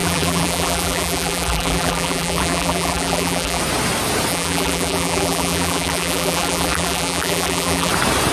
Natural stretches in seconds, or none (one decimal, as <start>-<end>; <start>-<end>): 3.6-4.3; 7.9-8.3